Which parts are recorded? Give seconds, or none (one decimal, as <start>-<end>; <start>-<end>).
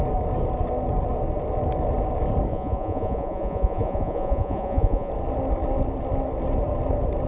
0.0-2.5; 5.1-7.3